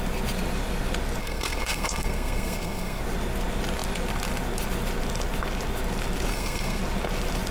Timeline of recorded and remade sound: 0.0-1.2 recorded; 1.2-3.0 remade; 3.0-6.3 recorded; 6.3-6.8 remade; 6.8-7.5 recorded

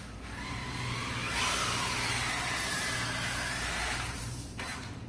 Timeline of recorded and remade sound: 0.0-5.1 remade

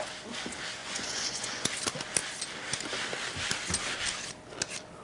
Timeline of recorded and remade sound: 0.0-0.8 recorded; 0.8-1.7 remade; 1.7-5.0 recorded

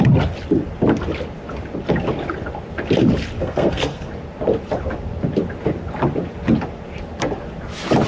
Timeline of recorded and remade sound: 0.0-3.4 recorded; 3.4-4.1 remade; 4.1-8.1 recorded

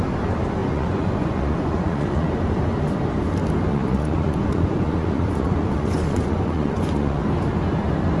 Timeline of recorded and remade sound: 0.0-0.6 recorded; 0.6-2.3 remade; 2.3-3.7 recorded; 3.7-7.2 remade; 7.2-8.2 recorded

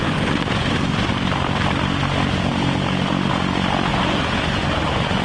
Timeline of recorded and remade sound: 0.0-1.1 remade; 1.1-3.9 recorded; 3.9-5.2 remade

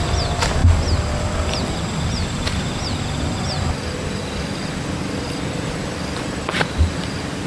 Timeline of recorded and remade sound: 0.0-7.5 recorded

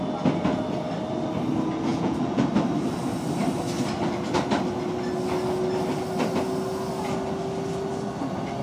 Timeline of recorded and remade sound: 0.0-1.9 recorded; 1.9-2.4 remade; 2.4-8.6 recorded